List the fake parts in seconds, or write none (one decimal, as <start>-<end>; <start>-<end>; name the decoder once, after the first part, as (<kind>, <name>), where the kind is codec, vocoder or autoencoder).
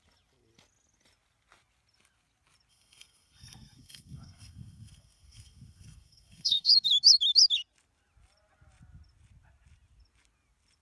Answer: 2.7-6.7 (codec, SNAC)